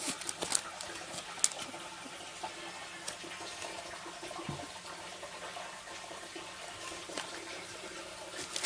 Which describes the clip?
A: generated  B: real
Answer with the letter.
B